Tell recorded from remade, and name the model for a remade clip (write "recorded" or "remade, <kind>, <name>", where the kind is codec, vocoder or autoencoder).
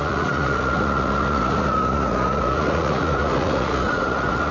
remade, vocoder, Vocos